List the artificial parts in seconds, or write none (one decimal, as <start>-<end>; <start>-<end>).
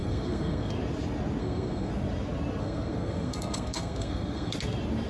0.0-0.7; 1.4-1.9; 2.6-4.5